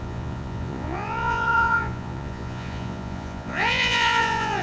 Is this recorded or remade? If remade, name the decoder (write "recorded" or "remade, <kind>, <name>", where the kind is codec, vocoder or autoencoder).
remade, vocoder, Vocos